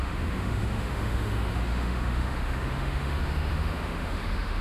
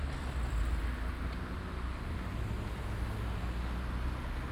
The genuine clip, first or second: second